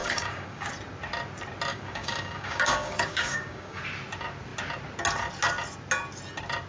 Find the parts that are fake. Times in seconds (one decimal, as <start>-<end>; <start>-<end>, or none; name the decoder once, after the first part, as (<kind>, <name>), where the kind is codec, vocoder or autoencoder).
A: 0.0-0.7 (codec, DAC); 1.7-3.8